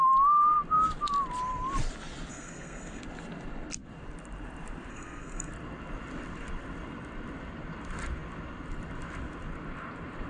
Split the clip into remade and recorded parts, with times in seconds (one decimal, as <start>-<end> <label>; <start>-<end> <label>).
0.0-2.3 recorded; 2.3-3.0 remade; 3.0-4.9 recorded; 4.9-5.5 remade; 5.5-10.3 recorded